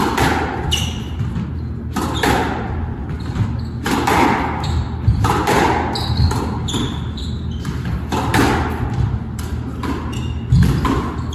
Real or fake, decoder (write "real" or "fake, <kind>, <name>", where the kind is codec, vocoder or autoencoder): real